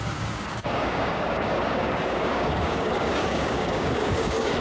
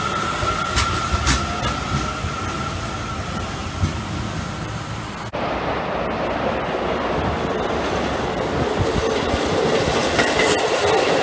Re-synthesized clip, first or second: first